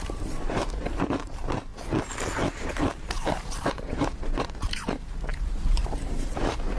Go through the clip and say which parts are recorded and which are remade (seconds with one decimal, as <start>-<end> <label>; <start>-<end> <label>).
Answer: 0.0-1.7 remade; 1.7-2.6 recorded; 2.6-6.8 remade